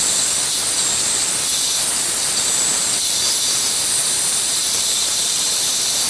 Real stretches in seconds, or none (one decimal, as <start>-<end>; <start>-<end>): 0.0-4.0; 5.2-6.1